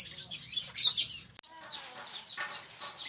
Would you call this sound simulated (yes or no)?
no